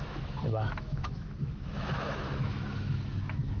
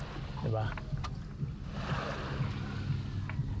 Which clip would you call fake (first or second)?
first